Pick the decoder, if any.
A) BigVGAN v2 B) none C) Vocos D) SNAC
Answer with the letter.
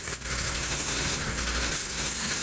D